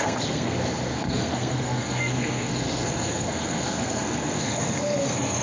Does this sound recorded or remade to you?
remade